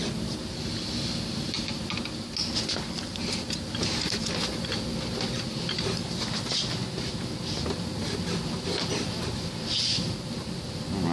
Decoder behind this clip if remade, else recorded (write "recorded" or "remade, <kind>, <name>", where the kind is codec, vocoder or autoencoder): recorded